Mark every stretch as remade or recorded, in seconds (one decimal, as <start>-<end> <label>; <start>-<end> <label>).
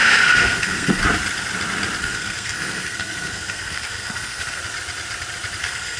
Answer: 0.0-1.0 remade; 1.0-2.0 recorded; 2.0-4.6 remade; 4.6-5.6 recorded; 5.6-6.0 remade